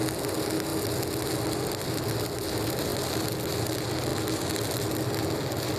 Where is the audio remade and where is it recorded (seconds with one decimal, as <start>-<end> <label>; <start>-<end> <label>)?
0.0-5.8 recorded